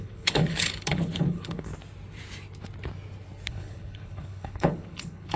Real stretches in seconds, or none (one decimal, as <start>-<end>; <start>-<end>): 1.7-3.5